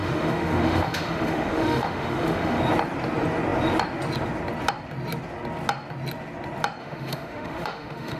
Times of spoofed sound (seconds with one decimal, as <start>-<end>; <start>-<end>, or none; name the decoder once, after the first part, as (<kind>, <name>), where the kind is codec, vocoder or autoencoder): 0.0-2.6 (autoencoder, DAC-VAE); 6.8-8.2